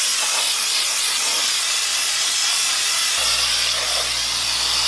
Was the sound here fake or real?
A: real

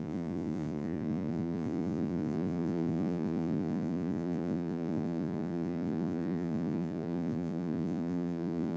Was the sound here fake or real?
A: fake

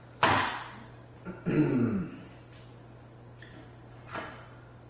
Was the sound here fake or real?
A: real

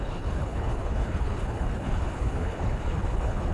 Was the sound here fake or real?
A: fake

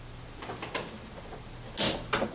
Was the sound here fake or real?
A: real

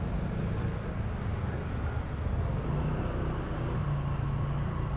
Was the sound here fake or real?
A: real